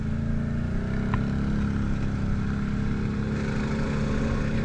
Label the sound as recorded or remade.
recorded